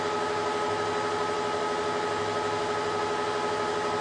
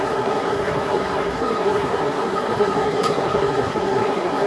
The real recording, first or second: first